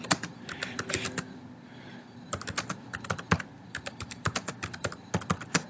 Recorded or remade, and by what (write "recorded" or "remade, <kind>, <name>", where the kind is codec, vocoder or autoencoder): recorded